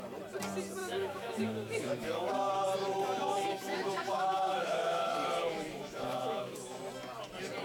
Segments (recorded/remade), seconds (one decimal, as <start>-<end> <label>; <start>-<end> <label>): 0.0-0.8 recorded; 0.8-2.5 remade; 2.5-3.2 recorded; 3.2-6.8 remade; 6.8-7.6 recorded